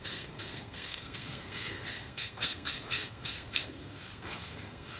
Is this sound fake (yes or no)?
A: yes